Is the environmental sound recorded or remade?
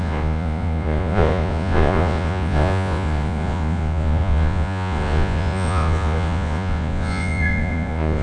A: remade